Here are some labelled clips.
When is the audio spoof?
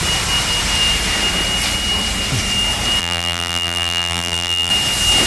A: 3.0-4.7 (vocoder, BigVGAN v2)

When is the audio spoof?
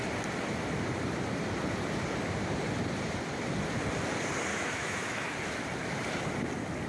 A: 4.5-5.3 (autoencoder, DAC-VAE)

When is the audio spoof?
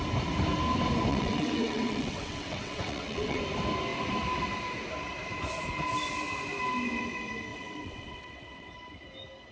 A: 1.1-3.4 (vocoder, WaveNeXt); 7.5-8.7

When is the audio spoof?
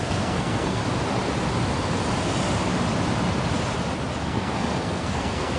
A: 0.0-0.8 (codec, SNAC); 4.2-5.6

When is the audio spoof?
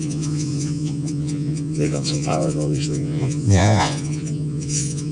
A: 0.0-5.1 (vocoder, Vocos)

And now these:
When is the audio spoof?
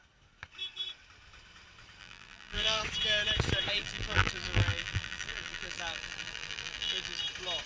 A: 2.0-2.8 (vocoder, BigVGAN v2); 3.8-7.2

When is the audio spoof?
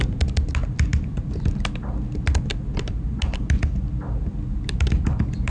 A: none